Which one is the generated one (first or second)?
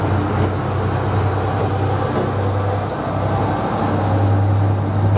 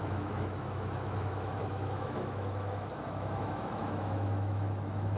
second